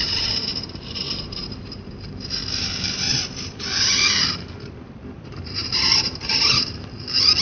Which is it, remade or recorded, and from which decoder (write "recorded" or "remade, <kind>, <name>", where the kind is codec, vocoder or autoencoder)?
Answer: remade, vocoder, BigVGAN v2